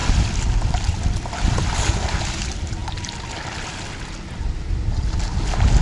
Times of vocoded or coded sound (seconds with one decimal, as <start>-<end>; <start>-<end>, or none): none